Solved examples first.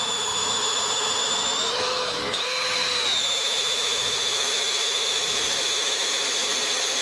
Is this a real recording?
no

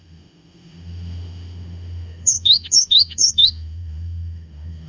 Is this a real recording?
no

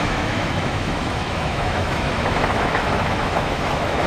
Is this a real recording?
no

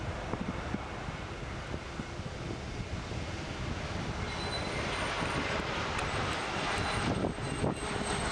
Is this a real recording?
yes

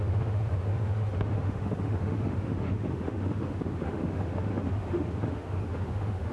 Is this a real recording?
no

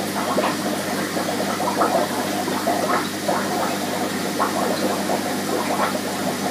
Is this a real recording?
yes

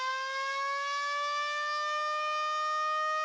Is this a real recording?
yes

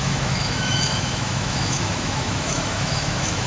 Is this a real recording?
no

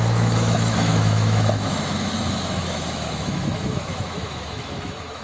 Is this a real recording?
no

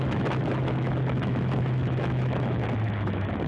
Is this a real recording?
no